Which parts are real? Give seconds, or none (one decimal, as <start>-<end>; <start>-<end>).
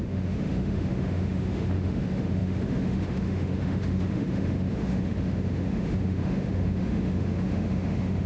none